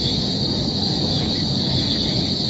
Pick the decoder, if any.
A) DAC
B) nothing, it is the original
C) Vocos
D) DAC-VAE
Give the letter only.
A